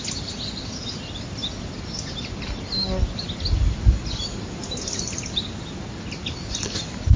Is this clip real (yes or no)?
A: yes